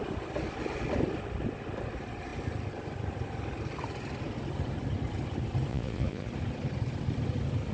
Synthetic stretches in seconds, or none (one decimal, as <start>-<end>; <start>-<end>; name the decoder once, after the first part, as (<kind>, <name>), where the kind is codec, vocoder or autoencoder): 5.7-6.3 (vocoder, Vocos)